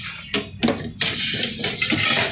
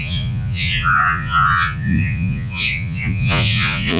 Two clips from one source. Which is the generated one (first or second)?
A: second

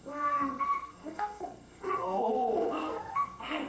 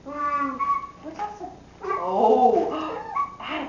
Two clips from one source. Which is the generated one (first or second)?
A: first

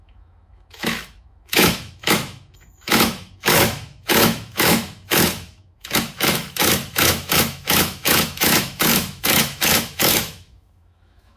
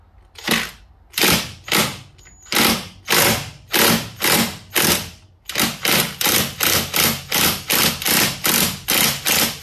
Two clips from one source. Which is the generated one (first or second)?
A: first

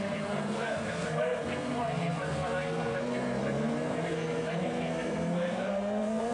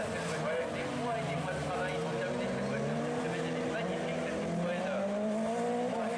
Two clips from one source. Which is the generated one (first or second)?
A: first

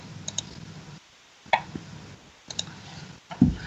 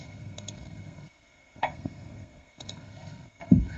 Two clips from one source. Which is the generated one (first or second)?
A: second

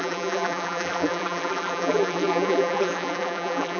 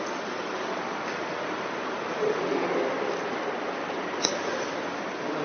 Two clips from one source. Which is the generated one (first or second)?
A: first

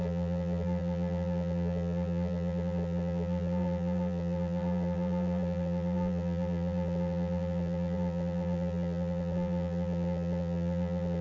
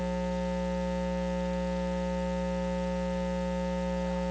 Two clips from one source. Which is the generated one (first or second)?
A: first